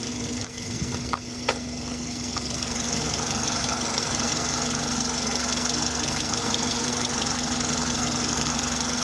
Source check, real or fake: fake